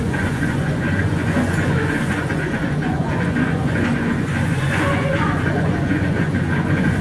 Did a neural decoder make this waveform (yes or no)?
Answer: yes